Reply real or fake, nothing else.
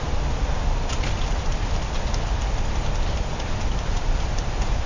real